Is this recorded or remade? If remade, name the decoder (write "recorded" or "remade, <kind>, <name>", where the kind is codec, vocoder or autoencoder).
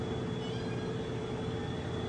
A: recorded